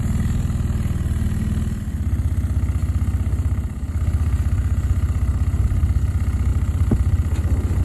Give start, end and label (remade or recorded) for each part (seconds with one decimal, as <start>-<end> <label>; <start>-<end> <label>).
0.0-7.8 recorded

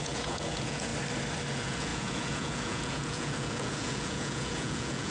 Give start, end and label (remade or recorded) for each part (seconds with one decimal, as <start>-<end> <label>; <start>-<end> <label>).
0.0-0.9 remade; 0.9-1.5 recorded; 1.5-5.1 remade